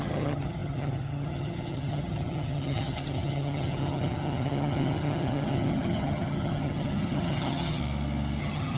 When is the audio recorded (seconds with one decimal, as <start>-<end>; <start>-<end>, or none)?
7.8-8.4